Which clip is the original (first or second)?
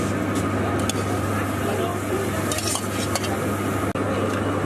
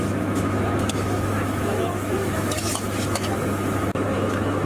first